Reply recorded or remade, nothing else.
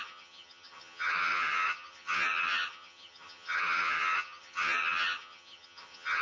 remade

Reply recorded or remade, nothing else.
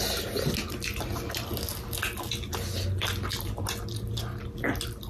recorded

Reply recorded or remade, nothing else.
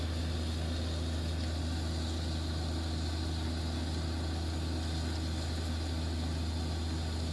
recorded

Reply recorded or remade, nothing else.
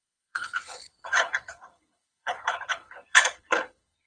remade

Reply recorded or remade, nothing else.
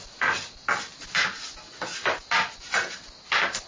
recorded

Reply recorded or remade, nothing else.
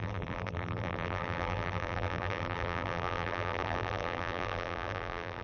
remade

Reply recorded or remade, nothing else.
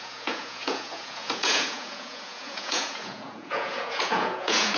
remade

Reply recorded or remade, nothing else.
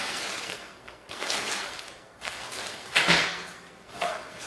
remade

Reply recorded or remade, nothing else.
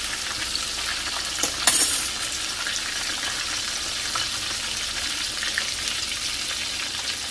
recorded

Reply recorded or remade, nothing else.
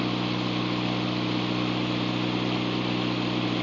recorded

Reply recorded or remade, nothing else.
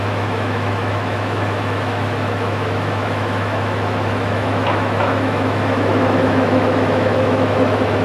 remade